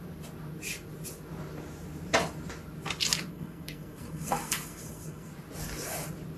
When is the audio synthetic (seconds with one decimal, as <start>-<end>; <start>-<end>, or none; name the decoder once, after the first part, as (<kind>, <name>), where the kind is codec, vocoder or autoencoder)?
3.3-5.3 (codec, SNAC)